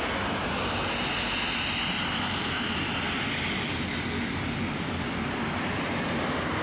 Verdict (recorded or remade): recorded